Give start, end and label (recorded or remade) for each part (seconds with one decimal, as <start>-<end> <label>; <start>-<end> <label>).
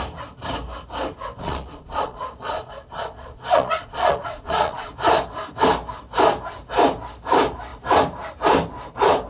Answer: 0.0-1.4 recorded; 1.4-4.9 remade; 4.9-9.3 recorded